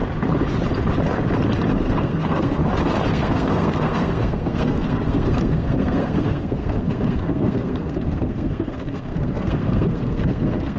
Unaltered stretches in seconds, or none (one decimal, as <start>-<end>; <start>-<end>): 0.0-1.7; 2.6-3.1